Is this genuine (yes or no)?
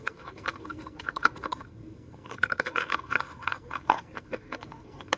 no